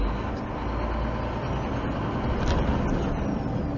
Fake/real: real